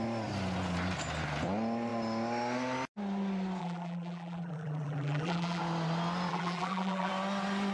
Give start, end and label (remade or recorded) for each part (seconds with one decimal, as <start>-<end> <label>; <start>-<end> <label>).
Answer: 0.0-3.6 recorded; 3.6-5.6 remade; 5.6-6.3 recorded; 6.3-7.1 remade; 7.1-7.7 recorded